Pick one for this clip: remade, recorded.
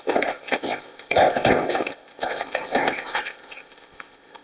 remade